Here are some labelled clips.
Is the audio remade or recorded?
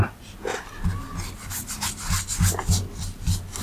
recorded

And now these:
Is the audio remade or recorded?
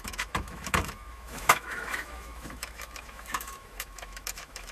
remade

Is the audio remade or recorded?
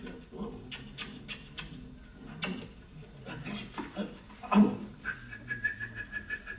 recorded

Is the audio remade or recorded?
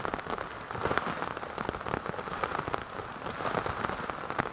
recorded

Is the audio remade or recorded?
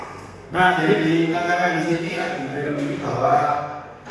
remade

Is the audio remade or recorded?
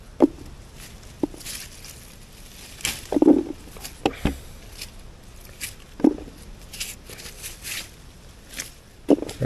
recorded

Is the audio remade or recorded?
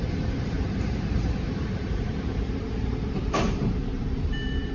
remade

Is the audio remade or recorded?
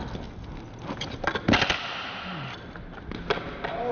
recorded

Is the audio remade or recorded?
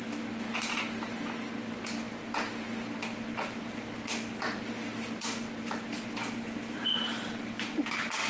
recorded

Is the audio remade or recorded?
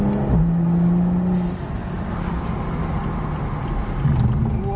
recorded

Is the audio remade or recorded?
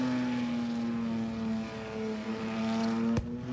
recorded